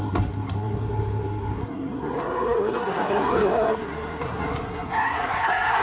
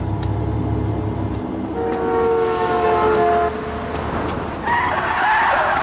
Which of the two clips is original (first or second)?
second